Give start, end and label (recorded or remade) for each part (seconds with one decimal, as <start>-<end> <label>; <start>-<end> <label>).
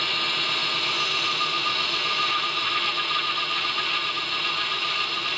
0.0-5.4 recorded